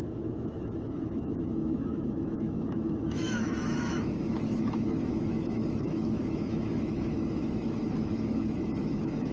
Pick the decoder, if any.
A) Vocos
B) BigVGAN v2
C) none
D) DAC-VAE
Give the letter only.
D